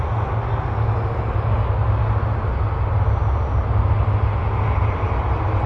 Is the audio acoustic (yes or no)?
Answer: yes